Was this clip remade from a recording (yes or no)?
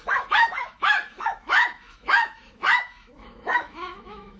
yes